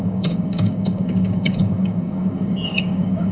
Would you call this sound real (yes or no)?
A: no